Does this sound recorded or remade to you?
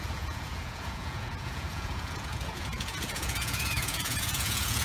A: remade